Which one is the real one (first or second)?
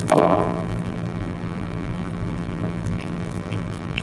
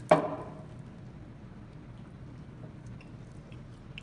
second